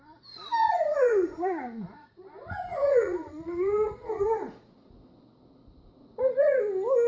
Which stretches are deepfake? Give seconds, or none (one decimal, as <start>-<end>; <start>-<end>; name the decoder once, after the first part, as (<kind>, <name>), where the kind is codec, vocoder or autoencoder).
0.6-4.9 (vocoder, Vocos); 6.0-6.6